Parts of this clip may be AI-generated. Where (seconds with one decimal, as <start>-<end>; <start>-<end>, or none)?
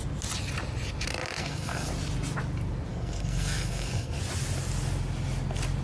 1.4-1.9; 2.9-4.2